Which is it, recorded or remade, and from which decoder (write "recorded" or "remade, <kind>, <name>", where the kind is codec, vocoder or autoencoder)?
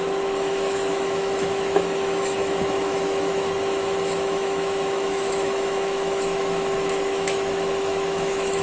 remade, autoencoder, DAC-VAE